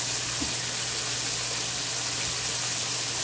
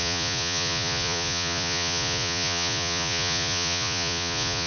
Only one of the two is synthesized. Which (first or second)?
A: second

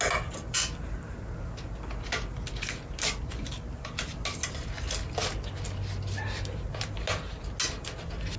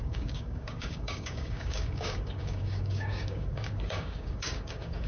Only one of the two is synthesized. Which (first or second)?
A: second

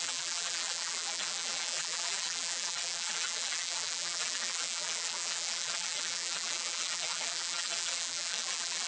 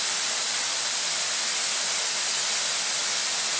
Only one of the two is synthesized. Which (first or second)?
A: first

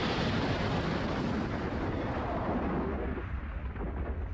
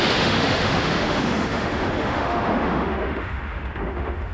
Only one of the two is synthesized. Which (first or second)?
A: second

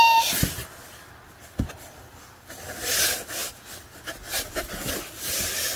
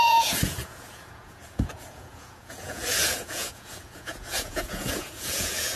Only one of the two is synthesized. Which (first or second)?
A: second